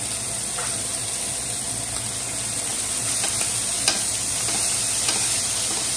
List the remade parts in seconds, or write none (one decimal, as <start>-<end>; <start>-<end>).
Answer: none